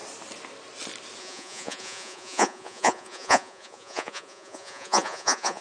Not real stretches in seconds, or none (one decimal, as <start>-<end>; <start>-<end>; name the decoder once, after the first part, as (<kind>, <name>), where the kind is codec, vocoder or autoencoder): 1.2-5.6 (vocoder, Vocos)

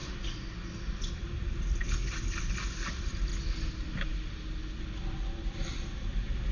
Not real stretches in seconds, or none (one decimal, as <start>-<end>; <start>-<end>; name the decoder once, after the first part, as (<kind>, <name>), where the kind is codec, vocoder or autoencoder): 2.4-3.3 (vocoder, BigVGAN v2); 5.0-6.5

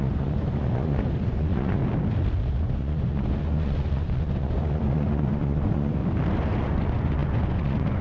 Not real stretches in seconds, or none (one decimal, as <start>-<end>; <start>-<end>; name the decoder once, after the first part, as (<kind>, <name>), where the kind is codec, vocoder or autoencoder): 0.0-1.8 (vocoder, Vocos); 2.6-6.0; 6.6-8.0

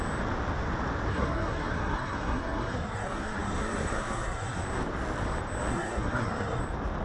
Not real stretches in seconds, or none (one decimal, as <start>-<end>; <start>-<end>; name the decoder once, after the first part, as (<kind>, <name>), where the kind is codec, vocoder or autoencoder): 1.1-4.6 (codec, SNAC); 5.7-6.6

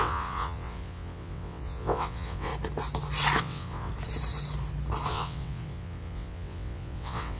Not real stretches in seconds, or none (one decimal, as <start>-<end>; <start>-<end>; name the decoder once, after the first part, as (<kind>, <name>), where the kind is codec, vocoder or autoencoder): 0.0-2.5 (vocoder, WaveNeXt); 3.4-3.9; 5.1-7.4

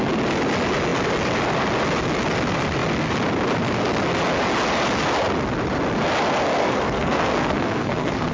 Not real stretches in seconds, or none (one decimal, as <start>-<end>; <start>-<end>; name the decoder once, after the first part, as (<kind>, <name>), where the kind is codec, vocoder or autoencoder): 6.6-8.3 (codec, SNAC)